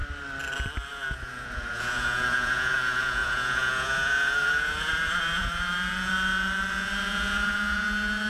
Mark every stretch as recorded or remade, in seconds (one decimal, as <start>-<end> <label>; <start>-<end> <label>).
0.0-0.9 recorded; 0.9-8.3 remade